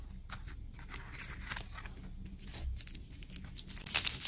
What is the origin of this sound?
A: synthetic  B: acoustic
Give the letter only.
B